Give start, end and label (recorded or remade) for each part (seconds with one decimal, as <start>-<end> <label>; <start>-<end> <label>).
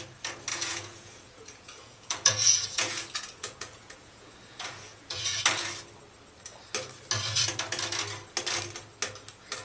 0.0-0.5 recorded; 0.5-5.4 remade; 5.4-9.6 recorded